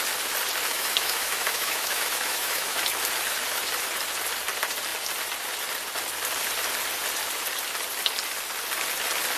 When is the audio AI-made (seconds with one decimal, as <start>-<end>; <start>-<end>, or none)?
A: 0.7-2.8